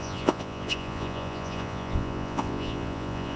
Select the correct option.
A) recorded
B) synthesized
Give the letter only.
B